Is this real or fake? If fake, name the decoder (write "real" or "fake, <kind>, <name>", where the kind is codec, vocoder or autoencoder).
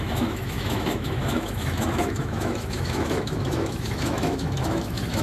fake, autoencoder, DAC-VAE